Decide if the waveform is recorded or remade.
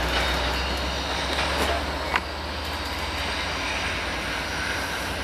recorded